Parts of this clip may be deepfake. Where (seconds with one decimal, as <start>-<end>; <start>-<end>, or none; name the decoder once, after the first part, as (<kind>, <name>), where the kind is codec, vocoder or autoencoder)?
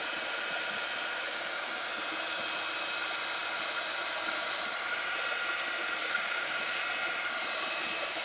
1.3-1.9 (codec, DAC); 6.0-6.8